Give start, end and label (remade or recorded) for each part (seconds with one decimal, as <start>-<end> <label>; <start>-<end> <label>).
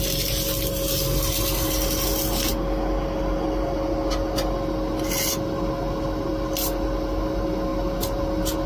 0.0-8.7 recorded